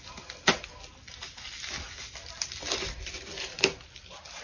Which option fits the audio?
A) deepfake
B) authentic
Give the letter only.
B